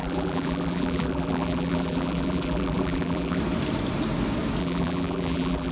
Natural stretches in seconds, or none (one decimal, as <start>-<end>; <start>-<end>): 3.4-4.6